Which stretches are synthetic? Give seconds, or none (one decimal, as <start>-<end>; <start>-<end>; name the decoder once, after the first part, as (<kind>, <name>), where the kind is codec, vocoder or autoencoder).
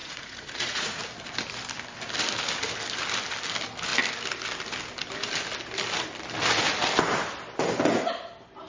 0.0-1.0 (vocoder, Vocos)